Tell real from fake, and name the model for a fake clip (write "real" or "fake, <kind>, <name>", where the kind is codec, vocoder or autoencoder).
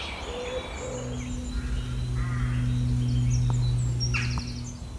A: real